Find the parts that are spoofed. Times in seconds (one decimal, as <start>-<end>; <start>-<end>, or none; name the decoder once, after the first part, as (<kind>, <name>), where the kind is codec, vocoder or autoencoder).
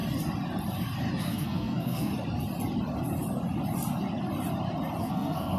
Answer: 1.2-2.1 (codec, SNAC); 5.0-5.6